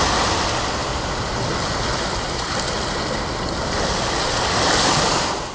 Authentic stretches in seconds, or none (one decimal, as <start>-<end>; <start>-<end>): 0.0-5.5